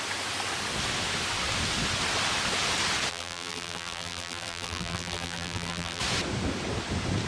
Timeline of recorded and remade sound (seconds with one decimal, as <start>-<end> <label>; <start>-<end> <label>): 0.0-3.1 recorded; 3.1-6.0 remade; 6.0-7.3 recorded